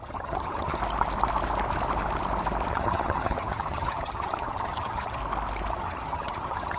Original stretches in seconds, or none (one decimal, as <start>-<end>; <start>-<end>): 0.8-2.7; 5.2-5.7